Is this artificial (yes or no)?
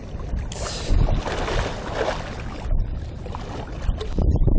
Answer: no